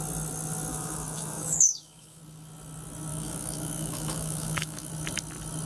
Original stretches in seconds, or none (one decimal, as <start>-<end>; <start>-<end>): 0.0-0.7; 2.2-3.1; 4.9-5.7